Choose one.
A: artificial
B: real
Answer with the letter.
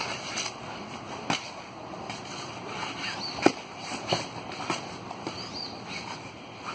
B